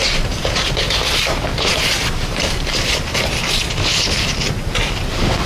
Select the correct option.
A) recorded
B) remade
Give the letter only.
B